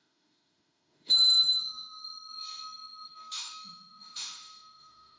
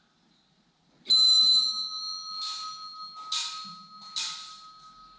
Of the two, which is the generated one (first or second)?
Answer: first